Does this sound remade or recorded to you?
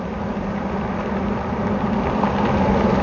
recorded